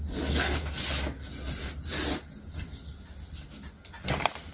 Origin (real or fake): real